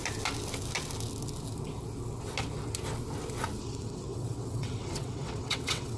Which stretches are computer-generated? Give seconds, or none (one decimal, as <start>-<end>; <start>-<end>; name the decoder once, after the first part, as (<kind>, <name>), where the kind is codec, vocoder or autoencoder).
3.6-6.0 (vocoder, WaveNeXt)